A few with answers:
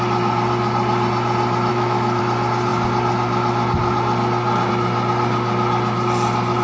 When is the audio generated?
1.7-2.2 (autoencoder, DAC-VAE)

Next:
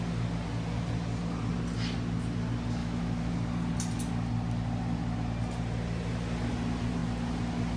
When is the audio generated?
2.8-3.3 (autoencoder, DAC-VAE)

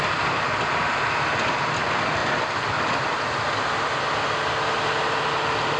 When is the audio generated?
none

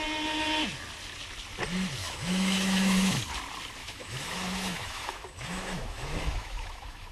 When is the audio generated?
2.0-3.2 (autoencoder, DAC-VAE); 3.8-7.1

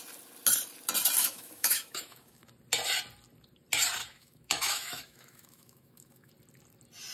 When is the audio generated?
1.2-2.5 (autoencoder, DAC-VAE); 4.0-6.3

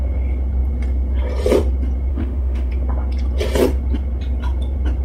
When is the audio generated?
2.1-2.7 (autoencoder, DAC-VAE)